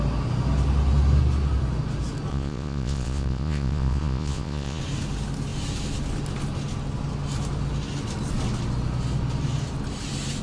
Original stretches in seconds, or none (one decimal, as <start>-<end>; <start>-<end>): 0.0-2.3; 4.8-10.4